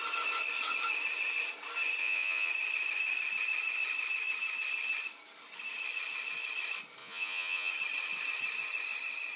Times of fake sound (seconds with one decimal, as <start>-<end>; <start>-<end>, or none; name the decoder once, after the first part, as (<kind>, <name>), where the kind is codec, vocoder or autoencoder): 2.0-2.5 (vocoder, Vocos); 7.0-7.7